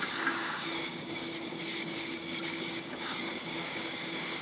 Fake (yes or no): yes